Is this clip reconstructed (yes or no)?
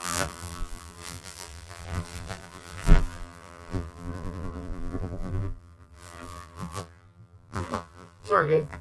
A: yes